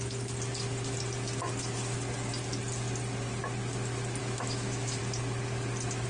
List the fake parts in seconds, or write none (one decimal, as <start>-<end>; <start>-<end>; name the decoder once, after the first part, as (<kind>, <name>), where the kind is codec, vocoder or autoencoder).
4.2-5.0 (autoencoder, DAC-VAE)